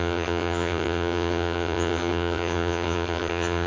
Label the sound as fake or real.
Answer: fake